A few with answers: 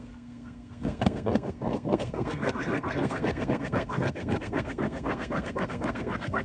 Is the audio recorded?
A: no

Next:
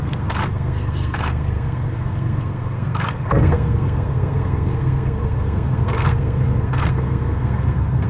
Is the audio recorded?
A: no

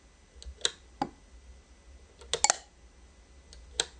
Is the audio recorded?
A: yes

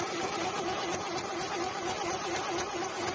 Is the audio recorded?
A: yes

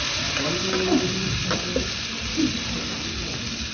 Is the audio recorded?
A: yes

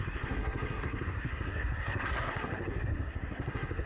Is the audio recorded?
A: no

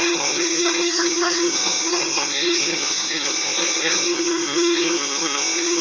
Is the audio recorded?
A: no